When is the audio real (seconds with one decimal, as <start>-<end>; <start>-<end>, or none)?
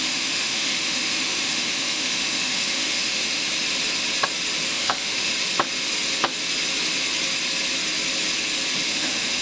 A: 3.5-4.7; 5.3-8.9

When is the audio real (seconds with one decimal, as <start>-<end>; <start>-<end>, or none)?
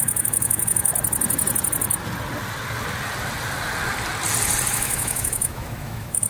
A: 0.9-4.7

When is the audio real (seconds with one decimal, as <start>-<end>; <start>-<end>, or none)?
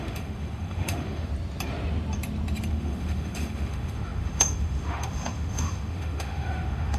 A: 1.3-2.7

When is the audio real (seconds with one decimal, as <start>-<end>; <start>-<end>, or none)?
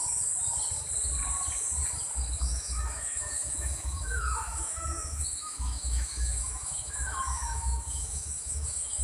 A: 0.0-2.4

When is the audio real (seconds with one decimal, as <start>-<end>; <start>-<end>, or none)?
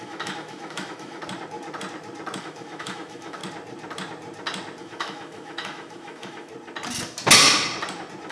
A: 1.2-2.4; 3.4-4.8; 6.5-8.3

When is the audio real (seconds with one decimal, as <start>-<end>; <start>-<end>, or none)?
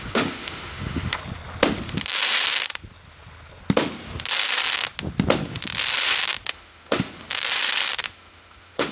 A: 1.2-6.5; 7.1-8.0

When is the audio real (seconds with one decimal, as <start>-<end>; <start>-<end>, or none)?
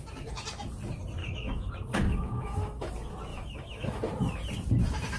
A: 0.0-1.2; 1.7-2.1; 2.9-3.3; 4.0-5.2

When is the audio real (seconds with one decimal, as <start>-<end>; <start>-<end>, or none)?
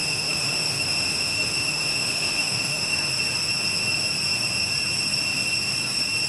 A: 3.1-6.3